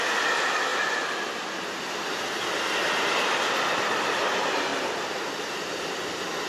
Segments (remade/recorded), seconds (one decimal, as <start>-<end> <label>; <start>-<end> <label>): 0.0-4.7 recorded; 4.7-5.3 remade; 5.3-6.5 recorded